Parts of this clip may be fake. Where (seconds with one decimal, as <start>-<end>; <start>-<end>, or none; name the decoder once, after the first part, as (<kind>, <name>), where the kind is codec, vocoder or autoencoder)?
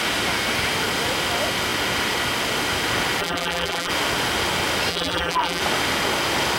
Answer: 3.2-3.9 (vocoder, BigVGAN v2); 4.9-5.6